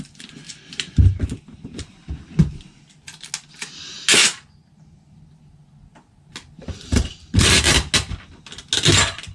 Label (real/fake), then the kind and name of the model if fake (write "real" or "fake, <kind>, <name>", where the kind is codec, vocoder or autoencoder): real